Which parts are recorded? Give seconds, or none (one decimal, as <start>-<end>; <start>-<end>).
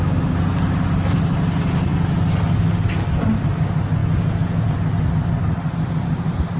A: 0.0-4.0; 4.7-6.6